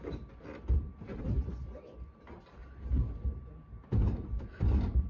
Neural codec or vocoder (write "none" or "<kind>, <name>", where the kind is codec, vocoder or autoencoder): none